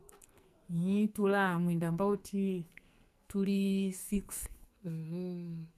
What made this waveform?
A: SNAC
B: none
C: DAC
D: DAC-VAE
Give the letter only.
A